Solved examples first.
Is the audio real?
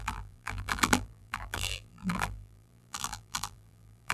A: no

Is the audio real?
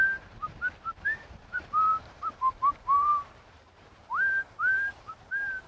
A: no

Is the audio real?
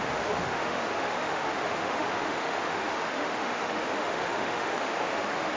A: no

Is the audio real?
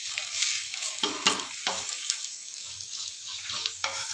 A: no